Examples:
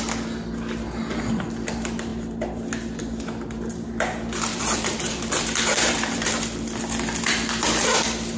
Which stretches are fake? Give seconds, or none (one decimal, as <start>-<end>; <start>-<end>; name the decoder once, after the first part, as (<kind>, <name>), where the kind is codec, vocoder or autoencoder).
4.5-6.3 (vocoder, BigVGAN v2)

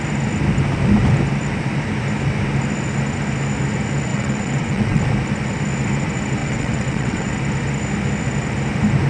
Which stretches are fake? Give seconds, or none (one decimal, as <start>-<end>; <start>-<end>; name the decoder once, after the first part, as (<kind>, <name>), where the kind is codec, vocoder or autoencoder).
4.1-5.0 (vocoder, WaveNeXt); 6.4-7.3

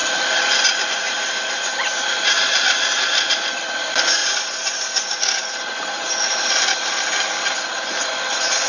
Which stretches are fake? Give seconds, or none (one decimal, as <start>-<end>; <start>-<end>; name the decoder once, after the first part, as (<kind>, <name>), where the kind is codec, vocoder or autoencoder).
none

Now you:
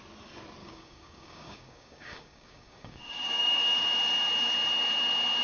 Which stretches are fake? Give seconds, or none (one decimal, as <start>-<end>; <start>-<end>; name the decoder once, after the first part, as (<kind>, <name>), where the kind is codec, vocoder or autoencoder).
0.6-3.8 (codec, DAC)